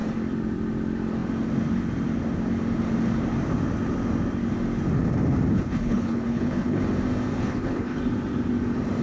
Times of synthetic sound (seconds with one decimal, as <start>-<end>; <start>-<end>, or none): 5.5-6.8; 7.4-8.0

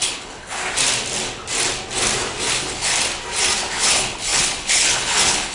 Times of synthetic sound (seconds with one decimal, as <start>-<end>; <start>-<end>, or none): 0.0-0.6; 2.5-2.9; 3.7-5.5

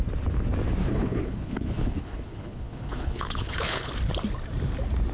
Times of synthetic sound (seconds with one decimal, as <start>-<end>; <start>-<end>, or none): 0.8-3.9

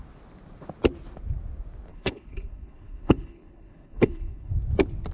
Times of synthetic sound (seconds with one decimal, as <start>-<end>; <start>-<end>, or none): 1.9-4.5

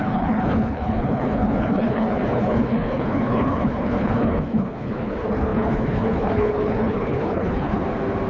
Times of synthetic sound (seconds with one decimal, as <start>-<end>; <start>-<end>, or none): 0.0-7.8

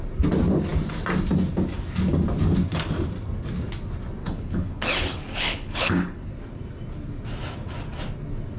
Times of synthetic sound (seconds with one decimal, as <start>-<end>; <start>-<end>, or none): 4.2-6.3